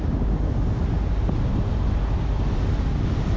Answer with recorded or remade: recorded